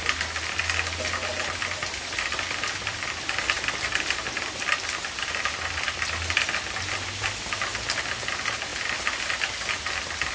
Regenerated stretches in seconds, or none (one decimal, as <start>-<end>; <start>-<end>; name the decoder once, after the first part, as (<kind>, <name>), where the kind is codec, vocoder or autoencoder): 1.6-6.1 (vocoder, BigVGAN v2); 8.7-9.3